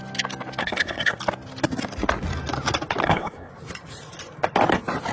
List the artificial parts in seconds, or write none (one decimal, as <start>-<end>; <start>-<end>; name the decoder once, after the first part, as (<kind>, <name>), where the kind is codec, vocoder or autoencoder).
0.6-1.2 (codec, SNAC); 3.0-3.5